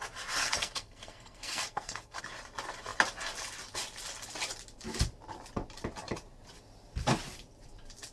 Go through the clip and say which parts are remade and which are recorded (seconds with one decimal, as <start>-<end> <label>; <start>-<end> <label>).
0.0-0.4 recorded; 0.4-2.2 remade; 2.2-8.1 recorded

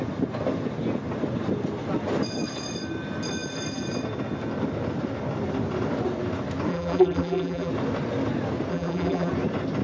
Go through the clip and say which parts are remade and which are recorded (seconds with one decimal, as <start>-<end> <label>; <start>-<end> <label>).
0.0-6.7 recorded; 6.7-7.7 remade; 7.7-8.7 recorded; 8.7-9.3 remade; 9.3-9.8 recorded

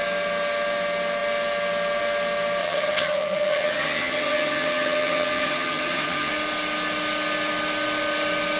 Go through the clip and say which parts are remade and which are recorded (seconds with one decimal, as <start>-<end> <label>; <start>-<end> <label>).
0.0-2.6 recorded; 2.6-6.3 remade; 6.3-8.6 recorded

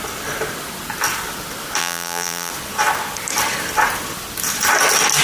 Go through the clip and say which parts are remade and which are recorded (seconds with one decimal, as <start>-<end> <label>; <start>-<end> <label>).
0.0-1.8 recorded; 1.8-2.5 remade; 2.5-5.2 recorded

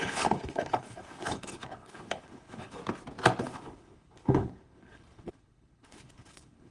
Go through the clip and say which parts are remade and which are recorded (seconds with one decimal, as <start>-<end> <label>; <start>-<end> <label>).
0.0-2.8 remade; 2.8-3.4 recorded; 3.4-6.7 remade